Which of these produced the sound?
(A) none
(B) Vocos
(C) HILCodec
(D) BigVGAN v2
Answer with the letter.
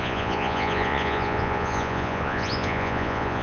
B